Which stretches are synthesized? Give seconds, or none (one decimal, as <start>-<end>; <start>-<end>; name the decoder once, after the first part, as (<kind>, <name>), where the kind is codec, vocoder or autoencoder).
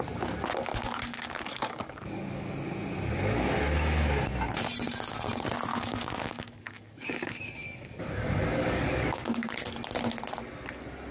0.7-2.5 (codec, DAC); 5.7-9.5